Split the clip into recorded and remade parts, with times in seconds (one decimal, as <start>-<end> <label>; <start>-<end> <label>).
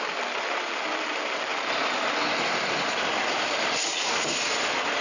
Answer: 0.0-5.0 recorded